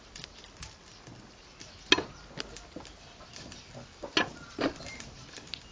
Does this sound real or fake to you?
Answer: real